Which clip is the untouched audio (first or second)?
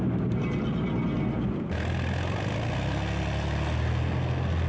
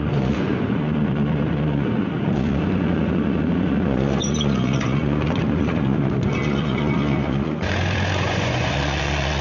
first